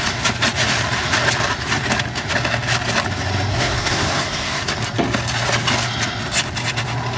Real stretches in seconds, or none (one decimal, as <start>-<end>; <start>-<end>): 0.0-3.5; 4.7-7.2